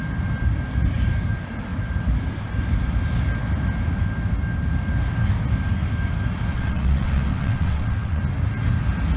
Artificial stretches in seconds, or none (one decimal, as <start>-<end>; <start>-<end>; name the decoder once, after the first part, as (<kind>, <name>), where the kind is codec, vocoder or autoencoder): 6.5-8.2 (vocoder, WaveNeXt)